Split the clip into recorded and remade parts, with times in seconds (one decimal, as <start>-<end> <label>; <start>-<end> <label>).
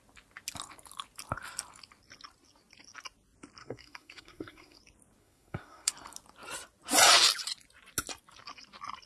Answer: 0.0-3.6 recorded; 3.6-4.8 remade; 4.8-5.2 recorded; 5.2-5.9 remade; 5.9-9.1 recorded